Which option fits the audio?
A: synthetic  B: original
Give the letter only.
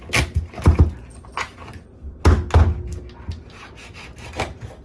B